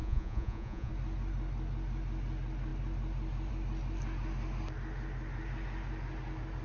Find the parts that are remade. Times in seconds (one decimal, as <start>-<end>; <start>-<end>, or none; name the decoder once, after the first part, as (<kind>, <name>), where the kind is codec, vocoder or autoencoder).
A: 0.0-0.9 (vocoder, Vocos)